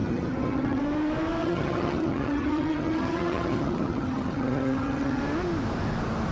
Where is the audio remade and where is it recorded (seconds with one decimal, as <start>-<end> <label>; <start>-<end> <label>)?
0.0-0.8 remade; 0.8-1.4 recorded; 1.4-5.2 remade; 5.2-6.3 recorded